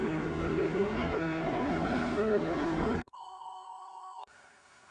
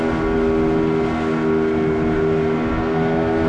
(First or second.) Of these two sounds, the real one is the second